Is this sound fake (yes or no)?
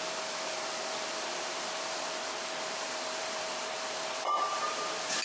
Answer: yes